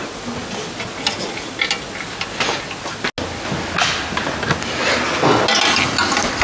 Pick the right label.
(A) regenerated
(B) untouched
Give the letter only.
B